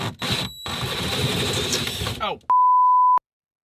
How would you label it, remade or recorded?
recorded